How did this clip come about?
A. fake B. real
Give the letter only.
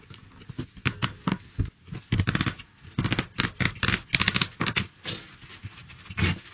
B